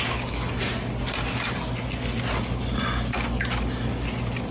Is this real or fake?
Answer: real